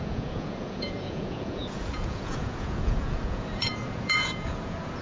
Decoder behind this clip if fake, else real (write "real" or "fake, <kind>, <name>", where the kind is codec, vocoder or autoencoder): fake, vocoder, Vocos